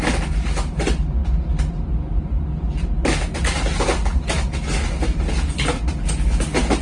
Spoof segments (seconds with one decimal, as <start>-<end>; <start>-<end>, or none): none